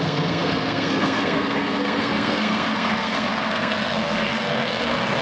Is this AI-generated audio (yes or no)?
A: yes